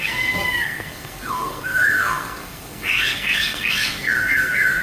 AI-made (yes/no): yes